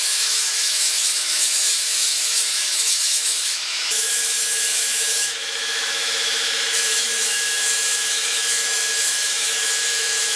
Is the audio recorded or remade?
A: remade